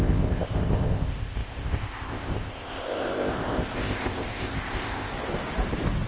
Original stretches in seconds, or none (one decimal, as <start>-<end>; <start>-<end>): 5.1-6.1